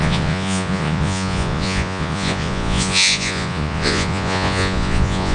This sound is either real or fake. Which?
fake